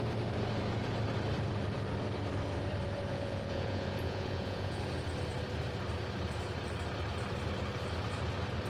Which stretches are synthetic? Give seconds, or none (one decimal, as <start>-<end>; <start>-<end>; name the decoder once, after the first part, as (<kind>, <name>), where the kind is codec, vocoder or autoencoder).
3.1-4.8 (vocoder, Vocos)